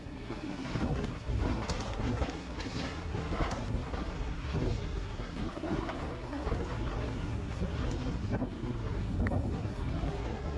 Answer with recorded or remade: remade